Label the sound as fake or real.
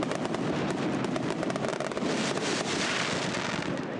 real